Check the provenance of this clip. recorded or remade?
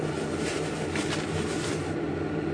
recorded